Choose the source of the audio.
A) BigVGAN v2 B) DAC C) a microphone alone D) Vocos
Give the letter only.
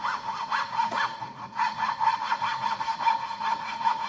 D